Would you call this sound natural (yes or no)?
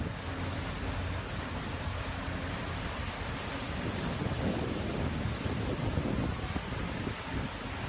yes